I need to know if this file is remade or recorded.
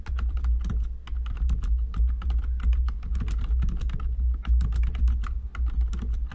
recorded